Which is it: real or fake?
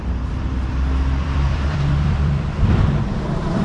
fake